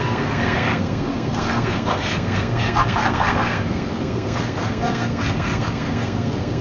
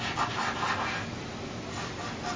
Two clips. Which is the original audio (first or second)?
second